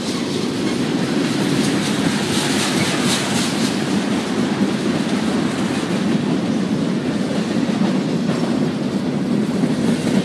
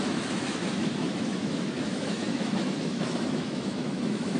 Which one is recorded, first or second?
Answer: first